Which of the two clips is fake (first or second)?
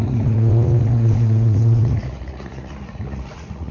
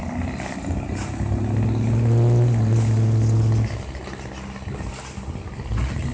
first